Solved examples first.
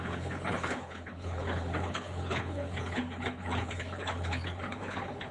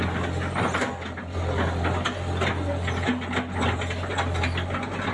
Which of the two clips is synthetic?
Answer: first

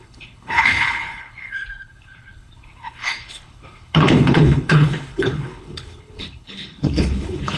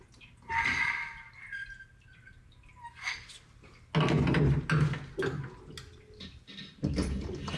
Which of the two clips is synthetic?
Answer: first